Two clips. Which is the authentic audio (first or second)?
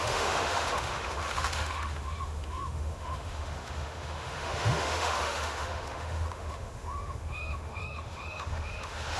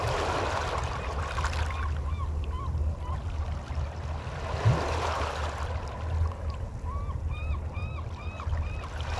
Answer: second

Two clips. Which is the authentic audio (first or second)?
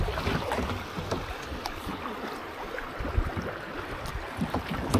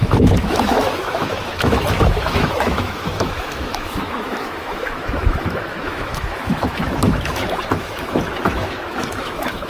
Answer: first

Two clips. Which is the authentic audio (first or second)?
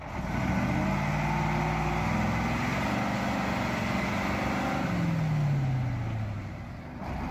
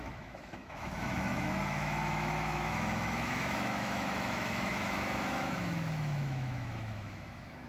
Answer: first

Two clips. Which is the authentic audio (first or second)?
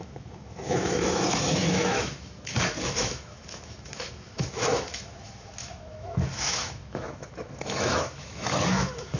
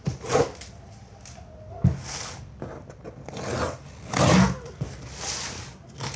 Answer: second